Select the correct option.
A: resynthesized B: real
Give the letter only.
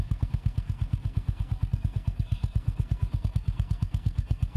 A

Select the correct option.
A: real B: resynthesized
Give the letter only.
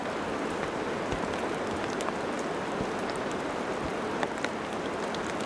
A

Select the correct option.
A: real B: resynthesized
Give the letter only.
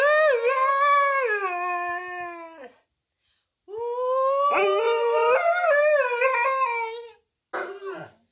A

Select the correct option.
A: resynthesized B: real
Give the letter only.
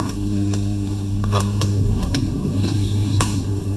A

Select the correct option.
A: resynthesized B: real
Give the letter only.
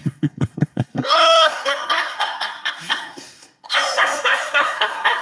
A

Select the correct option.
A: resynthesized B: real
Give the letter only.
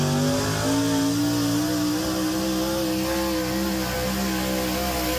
B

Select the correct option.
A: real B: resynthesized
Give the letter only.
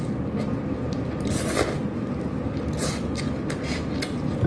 A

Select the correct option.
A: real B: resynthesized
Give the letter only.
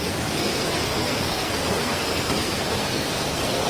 B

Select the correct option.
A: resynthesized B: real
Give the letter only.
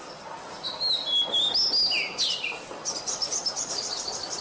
B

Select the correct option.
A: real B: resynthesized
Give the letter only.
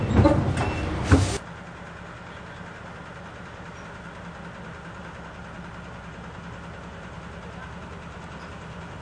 A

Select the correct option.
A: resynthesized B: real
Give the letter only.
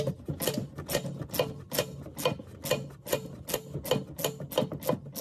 B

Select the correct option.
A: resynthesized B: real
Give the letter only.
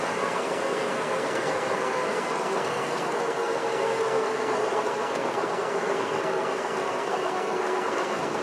A